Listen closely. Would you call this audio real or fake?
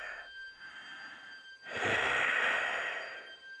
real